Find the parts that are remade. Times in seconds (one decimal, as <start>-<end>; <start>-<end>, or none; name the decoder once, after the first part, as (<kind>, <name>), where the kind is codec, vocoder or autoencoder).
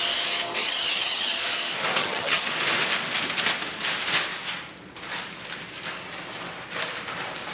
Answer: 0.6-1.4 (vocoder, HiFi-GAN); 2.0-2.5